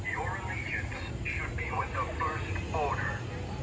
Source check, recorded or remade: recorded